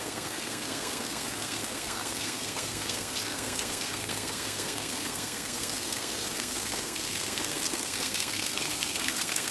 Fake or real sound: fake